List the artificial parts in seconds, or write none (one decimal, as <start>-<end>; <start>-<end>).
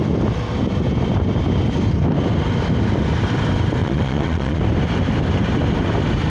3.8-4.6